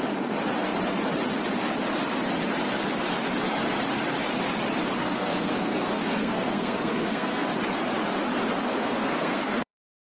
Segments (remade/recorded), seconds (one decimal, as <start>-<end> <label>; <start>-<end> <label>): 0.0-5.0 recorded; 5.0-7.5 remade; 7.5-8.6 recorded; 8.6-10.0 remade